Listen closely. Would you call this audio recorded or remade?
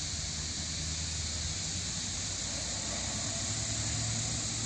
recorded